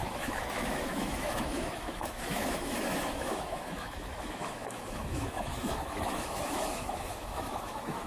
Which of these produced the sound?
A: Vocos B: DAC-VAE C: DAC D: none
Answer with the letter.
B